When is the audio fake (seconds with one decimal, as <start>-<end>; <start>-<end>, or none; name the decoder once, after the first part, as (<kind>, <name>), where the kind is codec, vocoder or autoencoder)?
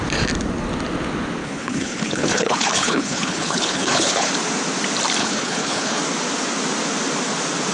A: 1.4-4.3 (codec, HILCodec); 5.2-6.0